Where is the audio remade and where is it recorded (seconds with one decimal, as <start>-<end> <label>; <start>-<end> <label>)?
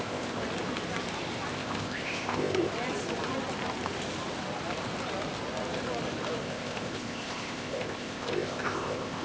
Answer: 0.0-0.4 remade; 0.4-1.5 recorded; 1.5-2.7 remade; 2.7-6.4 recorded; 6.4-9.2 remade